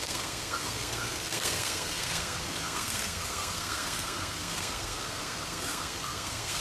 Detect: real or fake fake